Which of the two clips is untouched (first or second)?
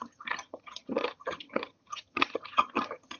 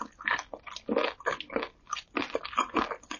second